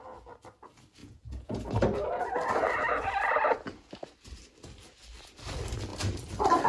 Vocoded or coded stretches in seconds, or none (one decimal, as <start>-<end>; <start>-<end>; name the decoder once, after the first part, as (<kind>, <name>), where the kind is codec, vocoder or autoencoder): 1.0-1.7 (vocoder, Vocos)